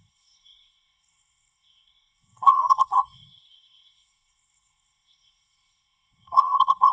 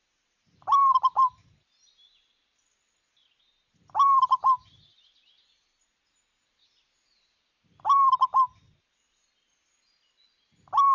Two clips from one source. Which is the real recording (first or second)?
second